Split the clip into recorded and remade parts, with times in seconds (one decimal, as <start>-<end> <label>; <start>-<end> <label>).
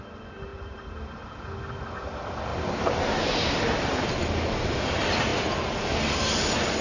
0.0-0.5 recorded; 0.5-1.0 remade; 1.0-2.5 recorded; 2.5-4.0 remade; 4.0-6.8 recorded